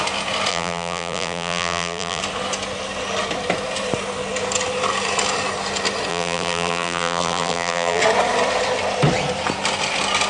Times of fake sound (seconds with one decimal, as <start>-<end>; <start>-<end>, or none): 0.5-2.2; 6.1-8.0